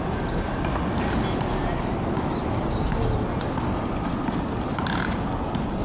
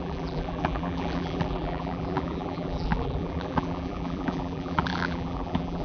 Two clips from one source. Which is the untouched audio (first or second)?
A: first